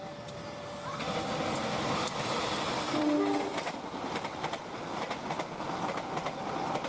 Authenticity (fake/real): real